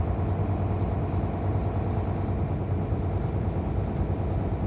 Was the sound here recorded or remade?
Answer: recorded